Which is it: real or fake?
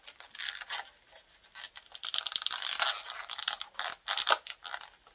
real